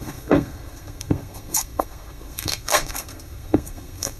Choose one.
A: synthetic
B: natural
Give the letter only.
A